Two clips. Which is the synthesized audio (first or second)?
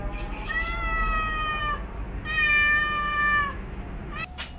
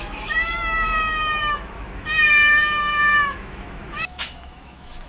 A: second